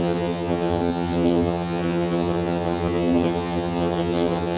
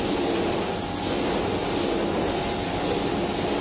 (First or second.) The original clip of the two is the second